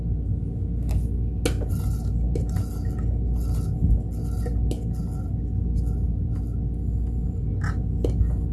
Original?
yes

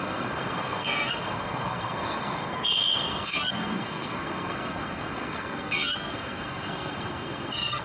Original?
no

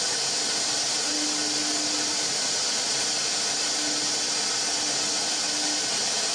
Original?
yes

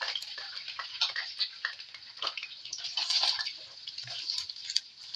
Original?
yes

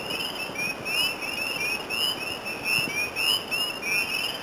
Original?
yes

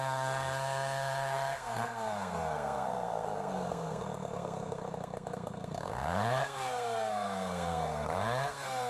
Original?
no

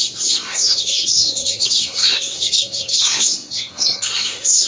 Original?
no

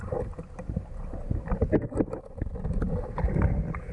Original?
yes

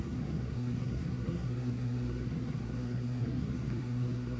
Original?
no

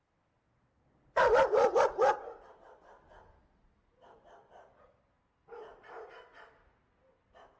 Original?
yes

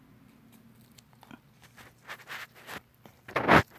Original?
yes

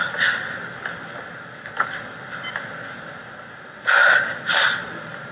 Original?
yes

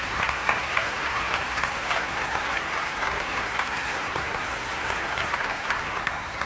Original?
no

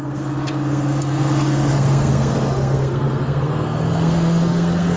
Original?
no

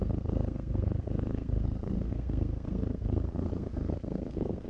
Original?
no